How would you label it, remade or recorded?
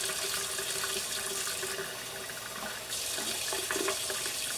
recorded